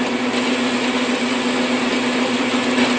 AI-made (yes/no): no